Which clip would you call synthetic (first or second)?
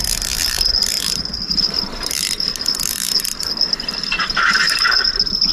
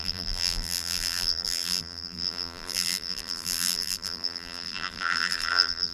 second